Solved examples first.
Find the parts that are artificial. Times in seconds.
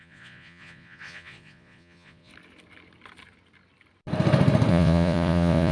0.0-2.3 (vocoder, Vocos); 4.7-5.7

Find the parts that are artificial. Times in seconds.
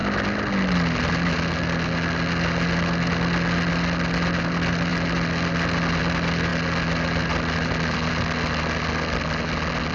none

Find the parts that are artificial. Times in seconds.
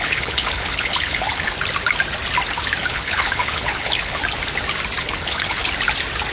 0.0-1.5 (codec, HILCodec); 2.8-4.2; 5.0-5.6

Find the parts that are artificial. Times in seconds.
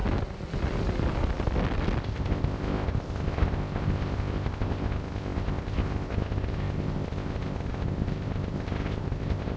2.0-9.6 (codec, ZipCodec)